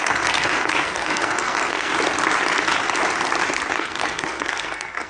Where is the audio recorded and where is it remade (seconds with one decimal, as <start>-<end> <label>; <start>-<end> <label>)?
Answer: 0.0-1.9 remade; 1.9-3.7 recorded; 3.7-5.1 remade